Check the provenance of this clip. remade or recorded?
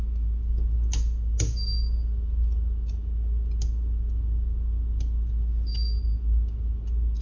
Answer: recorded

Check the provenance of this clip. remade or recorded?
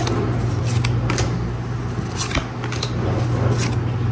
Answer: recorded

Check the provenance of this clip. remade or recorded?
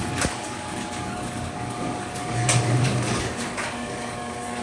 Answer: remade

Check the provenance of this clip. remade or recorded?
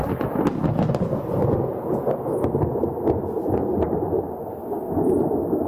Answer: recorded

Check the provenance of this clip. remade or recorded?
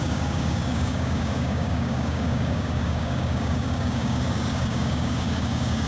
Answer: remade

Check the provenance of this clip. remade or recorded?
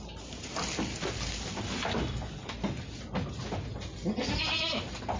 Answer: recorded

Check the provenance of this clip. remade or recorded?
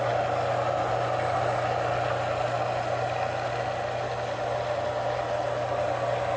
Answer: recorded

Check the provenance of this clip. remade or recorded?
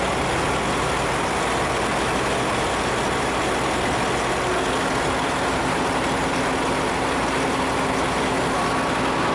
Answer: recorded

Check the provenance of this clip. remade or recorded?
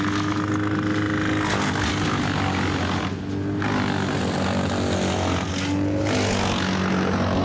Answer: recorded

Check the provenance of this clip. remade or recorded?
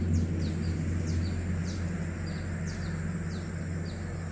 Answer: recorded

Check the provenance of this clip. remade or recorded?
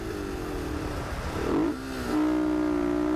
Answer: recorded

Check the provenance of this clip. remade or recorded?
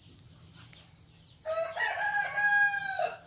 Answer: recorded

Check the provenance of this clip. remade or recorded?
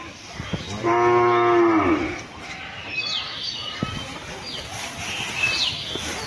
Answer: recorded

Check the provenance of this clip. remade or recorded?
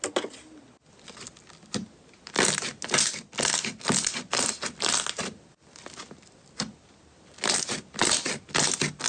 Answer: recorded